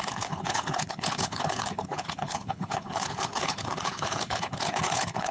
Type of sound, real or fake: fake